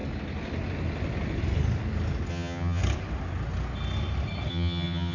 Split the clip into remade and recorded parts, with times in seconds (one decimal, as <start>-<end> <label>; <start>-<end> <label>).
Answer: 0.0-2.3 recorded; 2.3-2.8 remade; 2.8-4.5 recorded; 4.5-5.1 remade